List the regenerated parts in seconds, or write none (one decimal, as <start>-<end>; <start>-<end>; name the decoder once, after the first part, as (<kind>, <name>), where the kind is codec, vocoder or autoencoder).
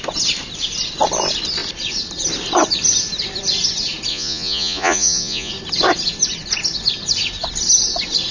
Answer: 4.1-5.5 (vocoder, Vocos)